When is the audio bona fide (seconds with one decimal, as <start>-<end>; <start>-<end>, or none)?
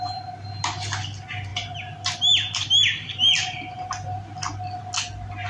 0.0-5.5